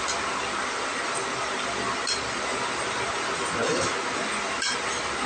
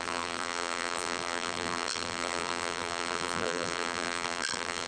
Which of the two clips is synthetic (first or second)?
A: second